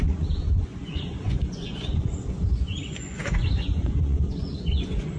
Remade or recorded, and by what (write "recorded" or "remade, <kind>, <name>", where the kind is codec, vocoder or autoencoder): remade, vocoder, Vocos